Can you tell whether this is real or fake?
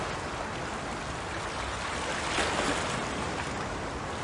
real